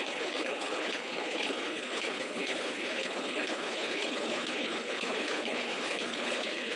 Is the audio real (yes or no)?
no